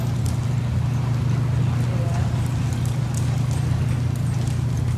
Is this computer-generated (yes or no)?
no